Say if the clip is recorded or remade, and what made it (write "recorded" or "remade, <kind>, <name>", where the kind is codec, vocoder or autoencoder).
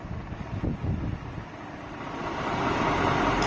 recorded